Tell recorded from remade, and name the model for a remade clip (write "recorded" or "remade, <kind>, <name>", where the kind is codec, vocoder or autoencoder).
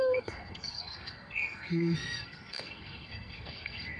remade, codec, SNAC